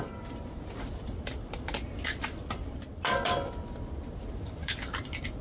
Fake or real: real